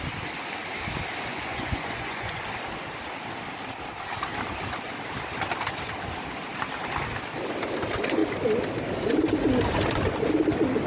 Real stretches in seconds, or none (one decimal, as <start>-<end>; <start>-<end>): 0.0-1.3; 2.4-10.9